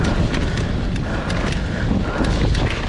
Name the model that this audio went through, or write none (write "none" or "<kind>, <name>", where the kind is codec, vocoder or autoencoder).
none